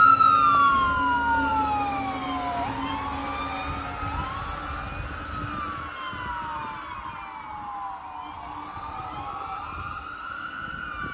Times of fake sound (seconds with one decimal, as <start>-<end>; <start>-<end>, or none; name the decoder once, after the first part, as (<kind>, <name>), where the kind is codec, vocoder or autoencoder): none